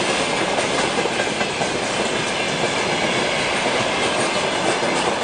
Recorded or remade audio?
recorded